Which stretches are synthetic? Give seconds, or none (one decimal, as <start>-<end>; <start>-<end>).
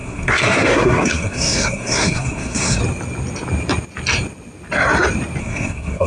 0.0-2.8; 5.4-6.1